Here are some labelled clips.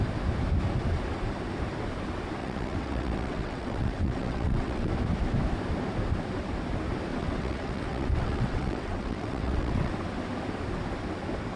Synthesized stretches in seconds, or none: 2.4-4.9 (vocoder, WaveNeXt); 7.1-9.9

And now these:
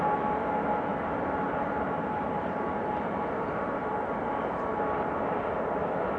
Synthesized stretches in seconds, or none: 0.9-3.9 (vocoder, BigVGAN v2)

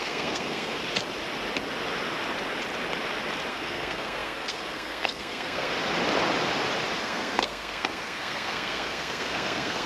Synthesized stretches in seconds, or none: 0.0-0.8 (codec, SNAC); 3.5-5.7; 7.0-9.9

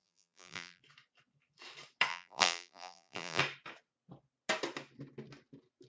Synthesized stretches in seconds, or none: 0.0-0.8 (vocoder, BigVGAN v2); 2.1-3.4

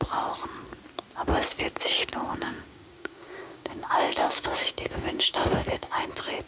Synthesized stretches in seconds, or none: 2.3-6.1 (codec, DAC)

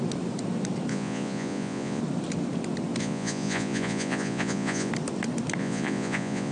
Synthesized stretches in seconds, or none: 0.9-2.0 (vocoder, Vocos); 3.0-4.9; 5.6-6.5